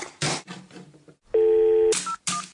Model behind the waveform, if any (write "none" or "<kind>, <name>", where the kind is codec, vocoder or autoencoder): none